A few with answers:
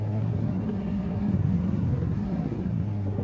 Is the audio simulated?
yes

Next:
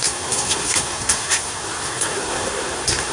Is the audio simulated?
yes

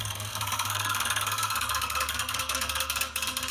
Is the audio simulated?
yes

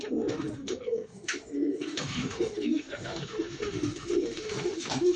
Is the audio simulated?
yes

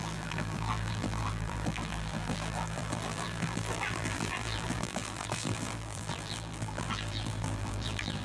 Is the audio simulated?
yes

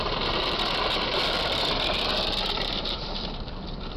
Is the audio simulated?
yes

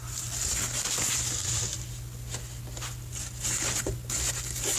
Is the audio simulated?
no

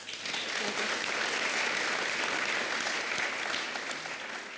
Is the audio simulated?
no